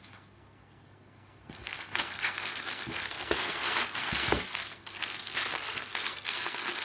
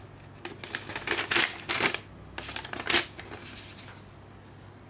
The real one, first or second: second